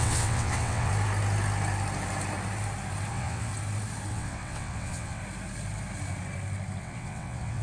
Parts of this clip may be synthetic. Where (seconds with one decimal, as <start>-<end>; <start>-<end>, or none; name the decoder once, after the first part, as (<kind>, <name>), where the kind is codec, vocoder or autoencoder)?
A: 0.0-0.9 (vocoder, WaveNeXt); 3.1-3.5; 4.1-5.2; 6.8-7.6